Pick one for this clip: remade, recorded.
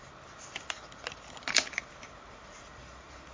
recorded